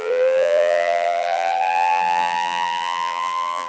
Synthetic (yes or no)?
yes